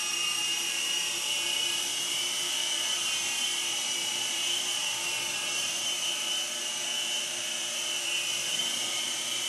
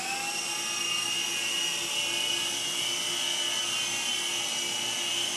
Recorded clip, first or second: second